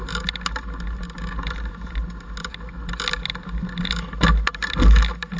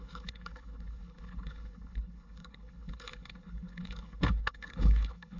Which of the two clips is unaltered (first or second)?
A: first